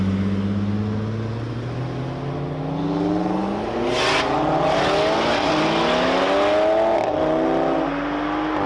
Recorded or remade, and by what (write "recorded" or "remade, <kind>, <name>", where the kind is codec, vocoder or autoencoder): recorded